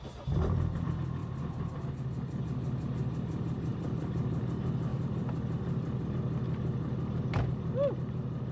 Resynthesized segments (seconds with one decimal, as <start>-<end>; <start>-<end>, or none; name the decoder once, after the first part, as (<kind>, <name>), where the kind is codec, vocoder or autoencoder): 1.2-1.8 (vocoder, BigVGAN v2); 3.7-4.5; 4.9-6.0